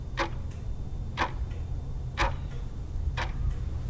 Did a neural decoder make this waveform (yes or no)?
no